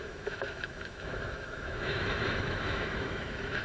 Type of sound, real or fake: fake